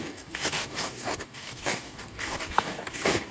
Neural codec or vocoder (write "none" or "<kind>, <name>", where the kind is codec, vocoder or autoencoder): codec, DAC